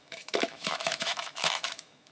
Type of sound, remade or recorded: remade